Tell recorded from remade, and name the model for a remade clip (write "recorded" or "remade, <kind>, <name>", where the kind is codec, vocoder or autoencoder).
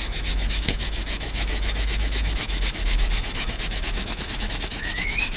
remade, autoencoder, DAC-VAE